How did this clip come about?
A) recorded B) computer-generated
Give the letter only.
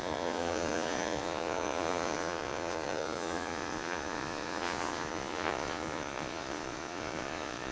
B